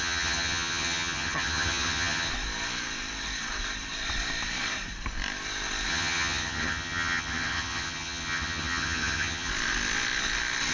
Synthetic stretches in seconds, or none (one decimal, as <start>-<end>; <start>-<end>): 0.0-2.3; 5.9-9.5